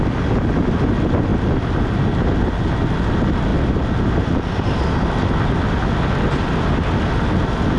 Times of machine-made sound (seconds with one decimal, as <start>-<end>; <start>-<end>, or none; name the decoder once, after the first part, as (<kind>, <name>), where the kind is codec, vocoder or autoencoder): none